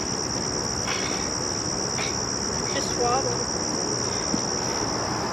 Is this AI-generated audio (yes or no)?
no